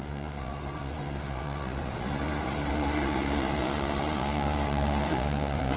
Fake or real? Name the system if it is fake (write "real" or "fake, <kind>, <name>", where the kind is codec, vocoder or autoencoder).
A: fake, vocoder, Vocos